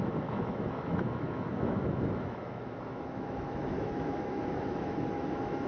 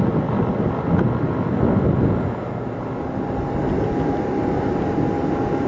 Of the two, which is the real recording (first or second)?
second